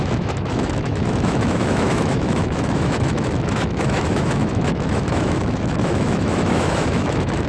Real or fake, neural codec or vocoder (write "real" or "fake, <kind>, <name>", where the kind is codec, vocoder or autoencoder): fake, autoencoder, DAC-VAE